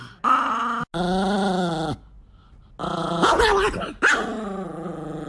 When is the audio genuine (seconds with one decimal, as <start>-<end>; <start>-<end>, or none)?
0.0-2.8; 3.4-5.3